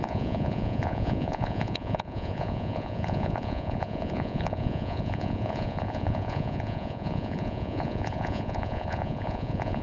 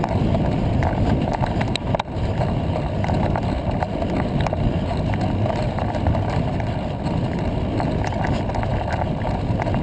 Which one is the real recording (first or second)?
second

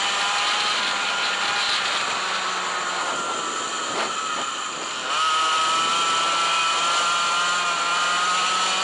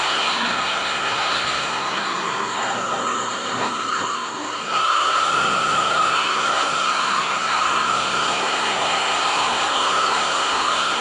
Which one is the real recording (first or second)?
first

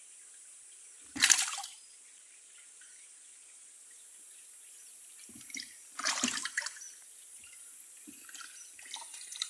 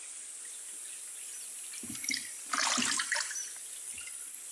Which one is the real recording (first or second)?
second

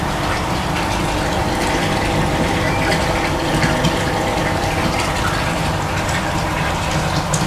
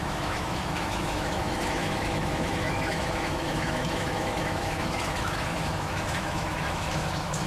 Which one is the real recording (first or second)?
first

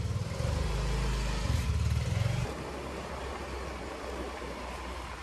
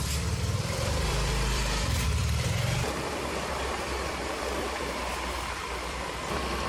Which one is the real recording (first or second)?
first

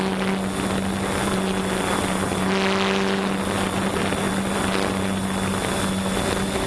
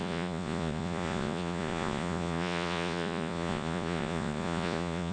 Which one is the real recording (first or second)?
first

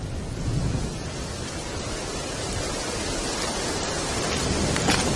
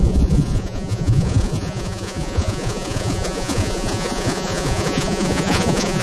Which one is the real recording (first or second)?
first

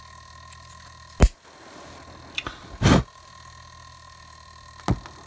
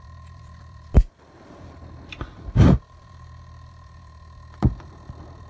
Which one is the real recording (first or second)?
first